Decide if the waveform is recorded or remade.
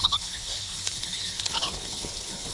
remade